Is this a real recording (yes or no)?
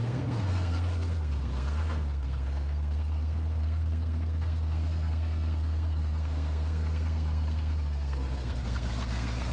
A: no